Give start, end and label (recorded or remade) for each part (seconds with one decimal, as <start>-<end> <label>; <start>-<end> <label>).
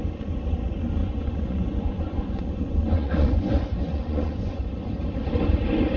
0.0-1.0 recorded; 1.0-4.6 remade; 4.6-6.0 recorded